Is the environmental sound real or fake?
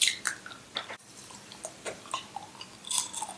fake